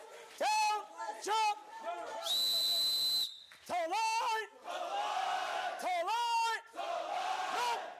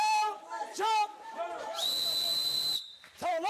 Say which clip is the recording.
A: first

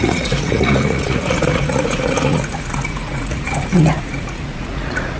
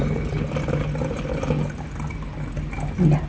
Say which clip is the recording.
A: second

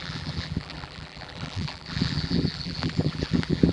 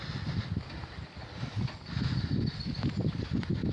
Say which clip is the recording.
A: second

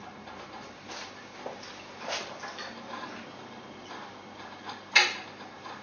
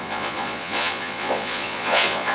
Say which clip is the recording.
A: first